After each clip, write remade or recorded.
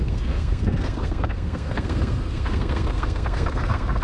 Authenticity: remade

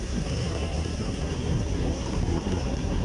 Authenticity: remade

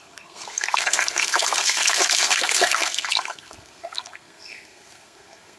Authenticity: remade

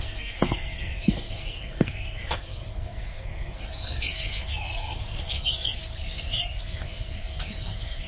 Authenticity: remade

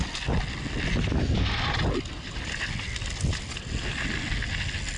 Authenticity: recorded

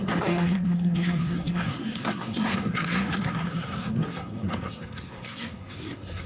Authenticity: remade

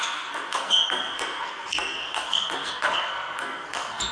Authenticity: remade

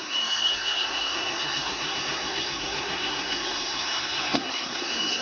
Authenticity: remade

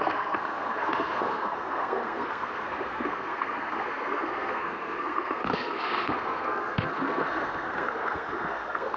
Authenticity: remade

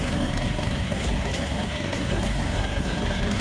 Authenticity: remade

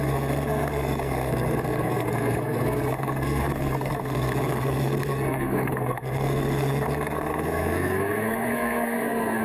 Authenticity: remade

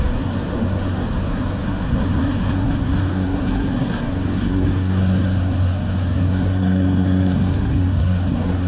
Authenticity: remade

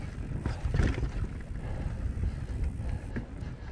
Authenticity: recorded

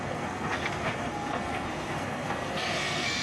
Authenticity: remade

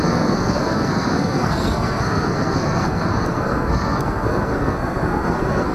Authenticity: remade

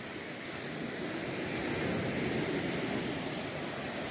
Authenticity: recorded